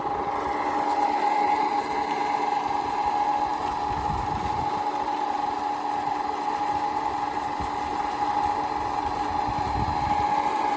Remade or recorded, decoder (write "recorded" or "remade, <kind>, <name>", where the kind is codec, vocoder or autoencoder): recorded